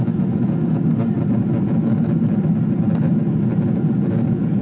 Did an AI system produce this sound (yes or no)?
no